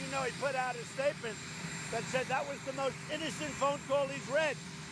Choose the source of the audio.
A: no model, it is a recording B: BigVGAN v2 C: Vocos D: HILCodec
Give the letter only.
A